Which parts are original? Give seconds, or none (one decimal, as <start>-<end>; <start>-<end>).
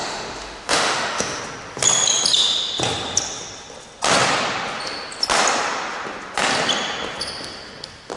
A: 1.4-8.2